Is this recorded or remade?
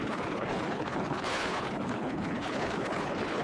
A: remade